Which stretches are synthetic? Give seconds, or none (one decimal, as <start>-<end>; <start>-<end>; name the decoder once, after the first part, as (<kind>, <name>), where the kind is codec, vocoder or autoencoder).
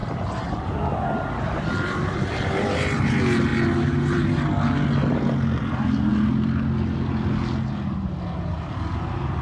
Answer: none